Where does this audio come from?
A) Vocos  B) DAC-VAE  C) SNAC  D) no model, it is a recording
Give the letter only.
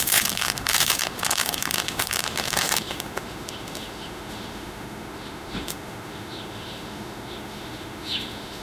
B